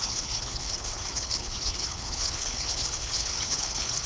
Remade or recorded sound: remade